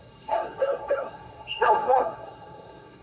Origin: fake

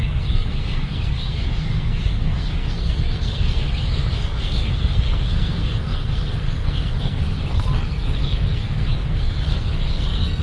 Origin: fake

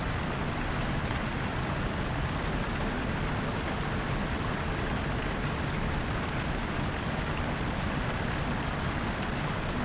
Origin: real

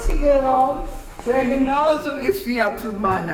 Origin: fake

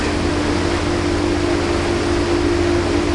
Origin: real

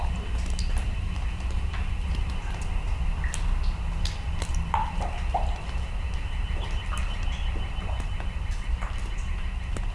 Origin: real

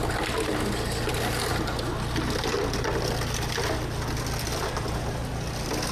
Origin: real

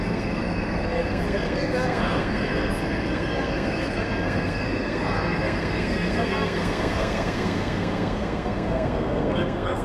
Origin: fake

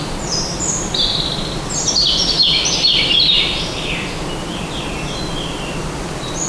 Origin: real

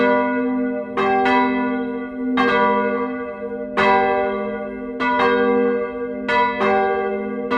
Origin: real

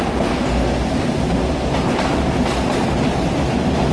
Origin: real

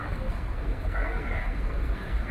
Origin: fake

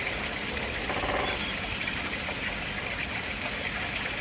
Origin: real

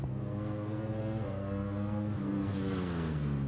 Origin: fake